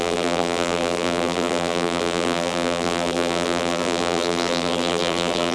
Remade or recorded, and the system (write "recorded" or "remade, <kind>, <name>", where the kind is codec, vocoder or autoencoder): remade, vocoder, BigVGAN v2